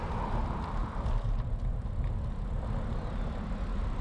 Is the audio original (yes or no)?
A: yes